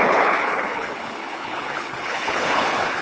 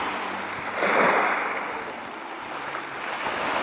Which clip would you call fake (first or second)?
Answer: first